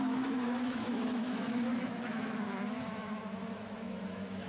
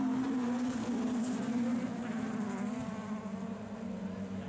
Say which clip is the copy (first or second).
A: first